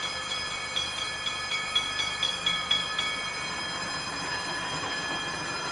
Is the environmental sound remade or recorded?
recorded